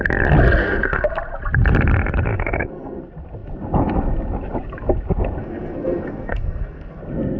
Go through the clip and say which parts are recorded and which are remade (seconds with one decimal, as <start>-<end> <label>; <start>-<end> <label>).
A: 0.0-0.6 recorded; 0.6-1.1 remade; 1.1-2.3 recorded; 2.3-3.0 remade; 3.0-5.4 recorded; 5.4-7.0 remade; 7.0-7.4 recorded